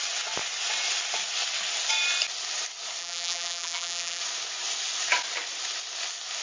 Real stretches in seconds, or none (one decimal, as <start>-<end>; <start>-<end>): 0.0-3.0; 4.2-6.4